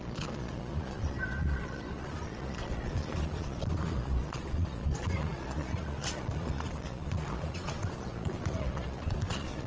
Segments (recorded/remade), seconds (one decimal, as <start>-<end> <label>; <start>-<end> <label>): 0.0-9.7 remade